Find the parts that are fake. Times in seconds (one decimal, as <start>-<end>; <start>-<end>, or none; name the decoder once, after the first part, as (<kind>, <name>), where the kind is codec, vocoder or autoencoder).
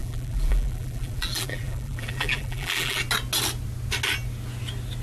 0.0-3.0 (vocoder, BigVGAN v2)